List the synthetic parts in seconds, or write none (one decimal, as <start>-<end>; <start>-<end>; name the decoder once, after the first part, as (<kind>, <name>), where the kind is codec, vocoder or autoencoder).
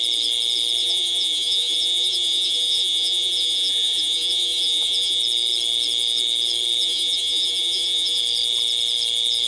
0.8-5.2 (vocoder, Vocos); 6.8-8.2